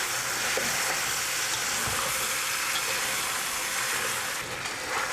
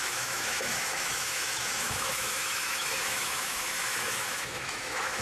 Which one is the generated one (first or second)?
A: second